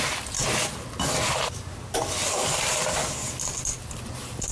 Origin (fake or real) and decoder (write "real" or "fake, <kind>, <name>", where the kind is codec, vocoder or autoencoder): real